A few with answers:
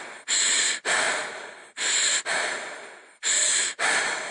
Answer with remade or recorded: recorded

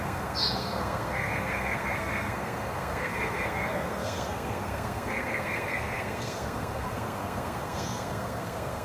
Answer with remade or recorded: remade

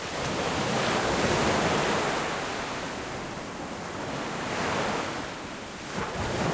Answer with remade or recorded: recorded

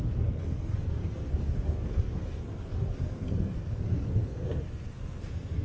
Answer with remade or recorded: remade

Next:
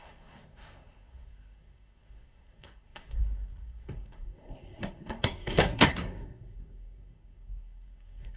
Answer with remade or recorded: remade